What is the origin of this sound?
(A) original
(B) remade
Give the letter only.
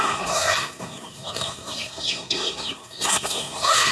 B